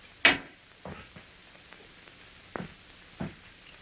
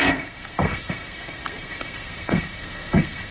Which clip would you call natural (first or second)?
first